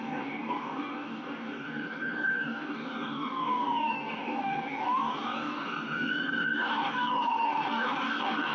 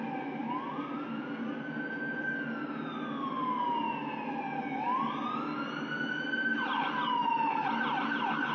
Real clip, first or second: second